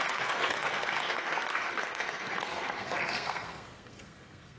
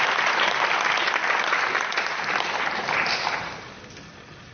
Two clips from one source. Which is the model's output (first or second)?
first